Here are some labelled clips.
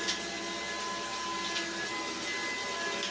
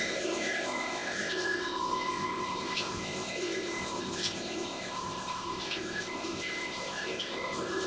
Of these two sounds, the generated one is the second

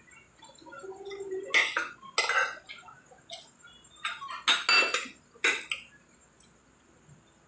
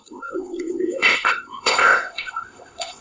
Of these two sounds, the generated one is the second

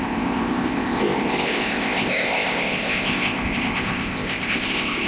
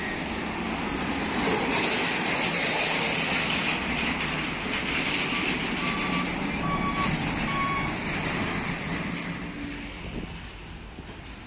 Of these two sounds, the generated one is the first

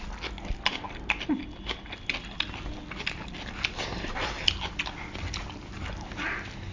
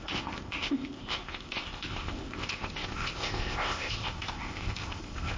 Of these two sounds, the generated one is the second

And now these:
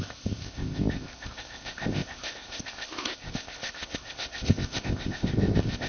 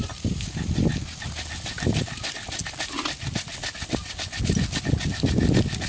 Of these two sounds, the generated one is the first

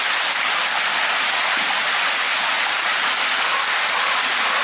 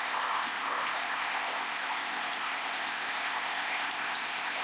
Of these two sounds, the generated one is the second